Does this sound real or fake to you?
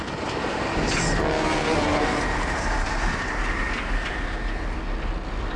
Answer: real